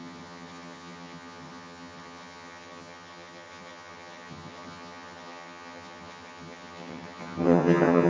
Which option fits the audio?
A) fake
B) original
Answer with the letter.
A